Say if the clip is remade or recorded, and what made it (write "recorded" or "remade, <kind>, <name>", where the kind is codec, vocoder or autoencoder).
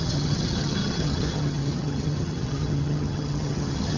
remade, vocoder, HiFi-GAN